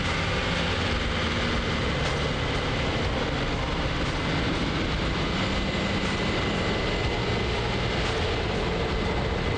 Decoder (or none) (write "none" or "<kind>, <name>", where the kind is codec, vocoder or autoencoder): none